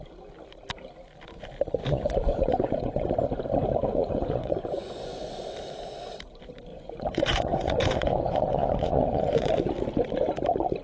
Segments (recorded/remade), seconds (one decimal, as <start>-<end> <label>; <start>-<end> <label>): 0.0-1.8 recorded; 1.8-3.1 remade; 3.1-3.9 recorded; 3.9-5.4 remade; 5.4-6.7 recorded; 6.7-9.7 remade; 9.7-10.8 recorded